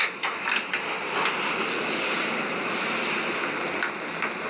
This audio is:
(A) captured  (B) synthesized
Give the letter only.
A